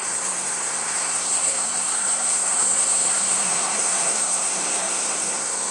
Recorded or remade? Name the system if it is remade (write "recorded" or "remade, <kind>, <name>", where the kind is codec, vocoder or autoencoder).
remade, codec, SNAC